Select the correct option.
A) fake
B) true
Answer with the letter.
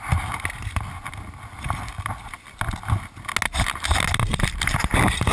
B